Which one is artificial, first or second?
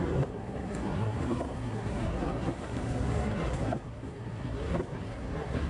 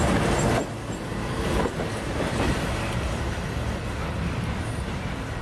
first